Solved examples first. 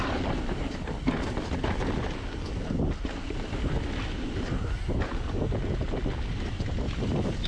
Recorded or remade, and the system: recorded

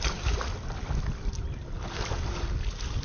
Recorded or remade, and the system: recorded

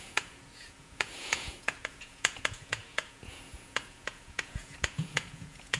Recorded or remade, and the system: remade, vocoder, Vocos